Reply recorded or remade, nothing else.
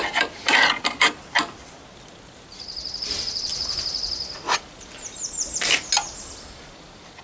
recorded